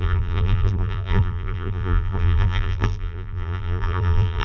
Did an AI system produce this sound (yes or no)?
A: yes